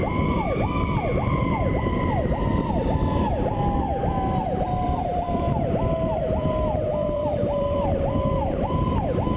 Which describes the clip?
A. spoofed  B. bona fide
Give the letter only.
A